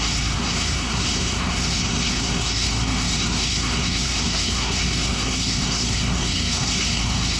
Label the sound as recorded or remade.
remade